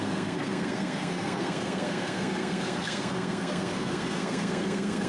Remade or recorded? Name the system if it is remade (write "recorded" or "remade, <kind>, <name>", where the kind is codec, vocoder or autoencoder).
remade, codec, SNAC